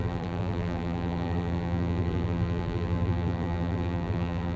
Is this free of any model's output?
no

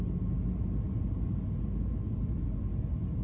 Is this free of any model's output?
yes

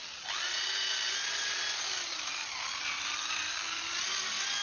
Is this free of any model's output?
yes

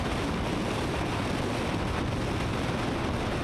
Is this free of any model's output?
yes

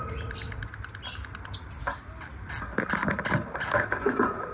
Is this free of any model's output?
yes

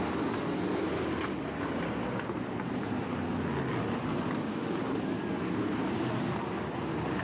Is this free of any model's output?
yes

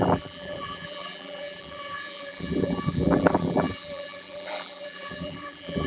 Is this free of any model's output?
no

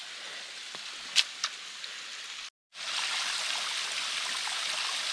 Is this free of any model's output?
yes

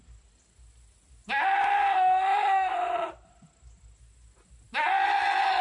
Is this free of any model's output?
yes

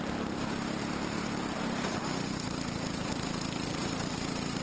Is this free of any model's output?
no